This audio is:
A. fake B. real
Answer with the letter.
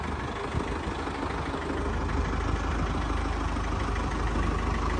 B